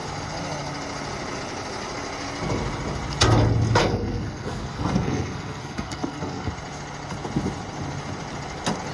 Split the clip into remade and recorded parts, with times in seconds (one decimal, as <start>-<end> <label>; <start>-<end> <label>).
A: 0.0-3.8 recorded; 3.8-6.5 remade; 6.5-8.9 recorded